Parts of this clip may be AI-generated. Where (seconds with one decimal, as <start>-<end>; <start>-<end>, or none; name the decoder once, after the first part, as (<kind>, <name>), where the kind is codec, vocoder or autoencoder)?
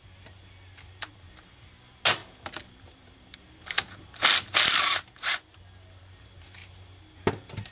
none